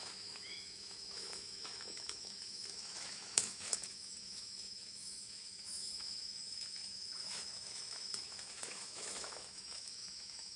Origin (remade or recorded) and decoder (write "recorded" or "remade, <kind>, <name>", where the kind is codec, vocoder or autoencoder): remade, autoencoder, DAC-VAE